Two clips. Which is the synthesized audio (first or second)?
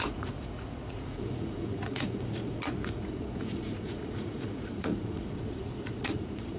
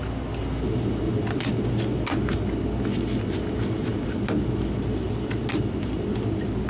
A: first